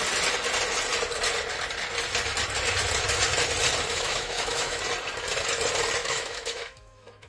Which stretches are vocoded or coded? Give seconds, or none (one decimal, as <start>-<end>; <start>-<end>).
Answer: 3.9-4.8; 6.0-7.3